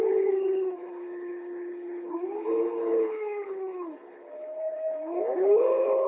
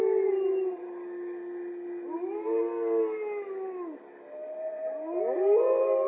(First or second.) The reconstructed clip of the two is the first